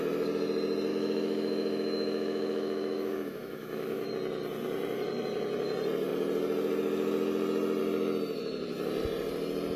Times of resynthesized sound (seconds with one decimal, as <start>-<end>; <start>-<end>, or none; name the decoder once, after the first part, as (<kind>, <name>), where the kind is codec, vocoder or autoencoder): 0.9-4.1 (autoencoder, DAC-VAE)